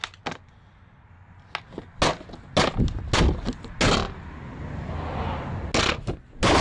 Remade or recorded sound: recorded